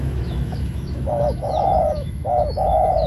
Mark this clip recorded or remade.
remade